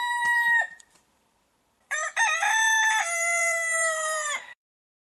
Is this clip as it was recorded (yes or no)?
no